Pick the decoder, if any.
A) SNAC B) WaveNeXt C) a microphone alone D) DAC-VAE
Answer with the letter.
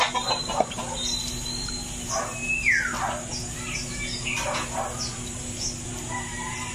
C